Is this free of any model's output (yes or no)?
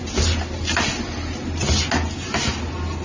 yes